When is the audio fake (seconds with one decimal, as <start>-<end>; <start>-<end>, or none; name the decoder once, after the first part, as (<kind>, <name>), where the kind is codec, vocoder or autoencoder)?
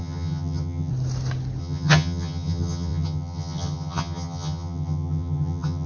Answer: 0.0-0.9 (vocoder, HiFi-GAN); 1.6-5.9